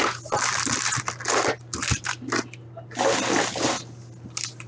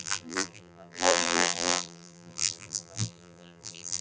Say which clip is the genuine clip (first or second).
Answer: first